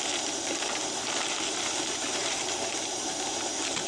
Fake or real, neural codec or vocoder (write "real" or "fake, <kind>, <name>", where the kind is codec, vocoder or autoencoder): real